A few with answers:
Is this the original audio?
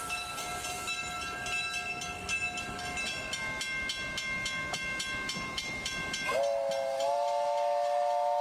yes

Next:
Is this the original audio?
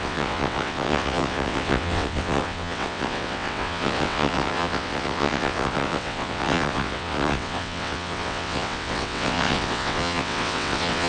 no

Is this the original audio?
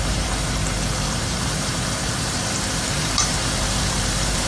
no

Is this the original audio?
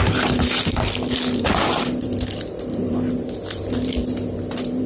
no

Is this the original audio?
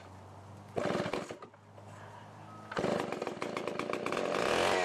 yes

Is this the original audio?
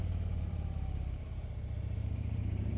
no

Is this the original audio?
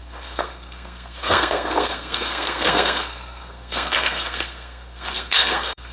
no